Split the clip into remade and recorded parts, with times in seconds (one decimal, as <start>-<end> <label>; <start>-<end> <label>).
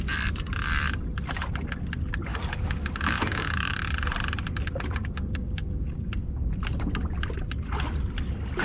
0.0-2.3 recorded; 2.3-3.7 remade; 3.7-5.0 recorded; 5.0-6.5 remade; 6.5-8.6 recorded